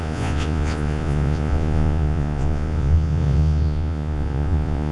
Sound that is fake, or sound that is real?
fake